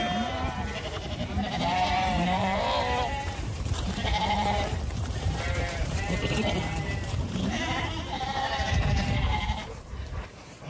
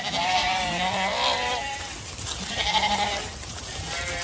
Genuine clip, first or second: second